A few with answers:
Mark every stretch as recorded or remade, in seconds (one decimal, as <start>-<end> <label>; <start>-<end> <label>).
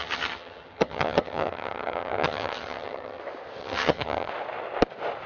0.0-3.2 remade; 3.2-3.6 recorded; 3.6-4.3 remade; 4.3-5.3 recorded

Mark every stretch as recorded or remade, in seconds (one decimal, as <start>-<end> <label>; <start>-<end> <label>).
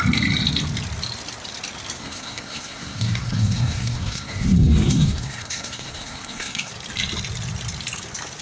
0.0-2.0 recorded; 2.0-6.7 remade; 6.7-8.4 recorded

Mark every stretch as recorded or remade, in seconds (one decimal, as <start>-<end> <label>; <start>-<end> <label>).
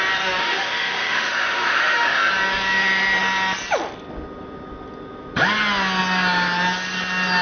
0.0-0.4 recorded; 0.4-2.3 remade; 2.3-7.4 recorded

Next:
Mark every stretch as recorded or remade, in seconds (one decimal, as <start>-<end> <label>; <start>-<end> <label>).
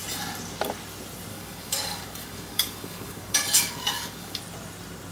0.0-1.3 recorded; 1.3-4.4 remade; 4.4-5.1 recorded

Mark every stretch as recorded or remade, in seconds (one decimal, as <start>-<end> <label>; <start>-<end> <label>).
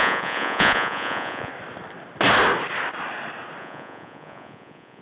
0.0-1.5 remade; 1.5-3.6 recorded; 3.6-5.0 remade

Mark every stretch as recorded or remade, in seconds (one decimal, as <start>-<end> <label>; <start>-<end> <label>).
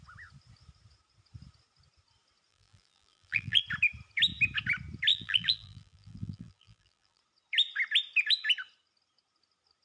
0.0-2.5 recorded; 2.5-3.6 remade; 3.6-5.1 recorded; 5.1-7.2 remade; 7.2-9.8 recorded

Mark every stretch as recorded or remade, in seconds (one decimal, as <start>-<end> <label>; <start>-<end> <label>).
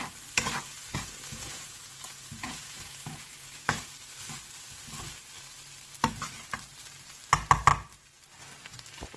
0.0-0.9 recorded; 0.9-3.9 remade; 3.9-9.2 recorded